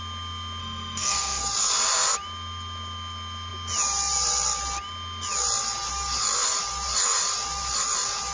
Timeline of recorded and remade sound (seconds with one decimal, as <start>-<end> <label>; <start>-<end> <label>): 0.0-0.6 recorded; 0.6-1.4 remade; 1.4-8.3 recorded